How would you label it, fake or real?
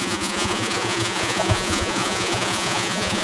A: fake